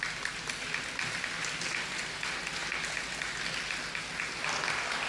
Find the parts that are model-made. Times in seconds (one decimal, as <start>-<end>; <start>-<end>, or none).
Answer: none

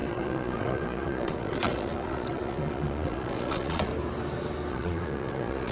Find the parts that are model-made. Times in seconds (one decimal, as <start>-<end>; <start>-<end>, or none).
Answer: 0.0-3.9; 4.7-5.7

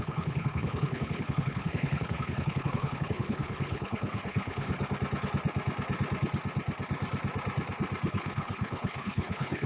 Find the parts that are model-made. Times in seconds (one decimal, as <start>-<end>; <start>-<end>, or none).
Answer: 0.0-4.7; 8.1-9.7

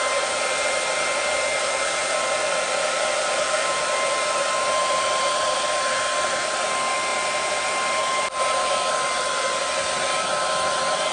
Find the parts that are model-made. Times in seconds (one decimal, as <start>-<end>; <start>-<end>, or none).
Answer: 2.0-3.8; 4.8-5.7; 7.1-9.6